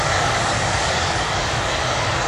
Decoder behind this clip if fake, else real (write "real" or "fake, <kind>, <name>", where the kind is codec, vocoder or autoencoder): fake, codec, DAC